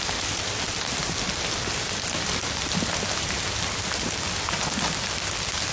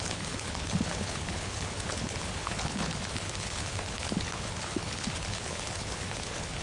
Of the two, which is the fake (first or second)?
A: second